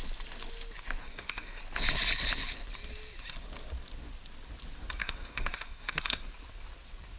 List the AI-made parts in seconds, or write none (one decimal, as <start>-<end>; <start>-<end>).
1.0-1.6; 5.0-6.3